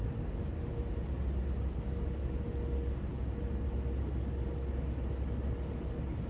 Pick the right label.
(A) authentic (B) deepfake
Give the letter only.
A